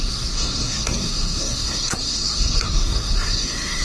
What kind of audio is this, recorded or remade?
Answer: remade